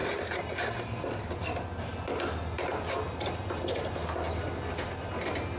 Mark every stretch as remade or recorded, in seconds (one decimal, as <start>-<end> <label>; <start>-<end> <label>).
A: 0.0-5.6 recorded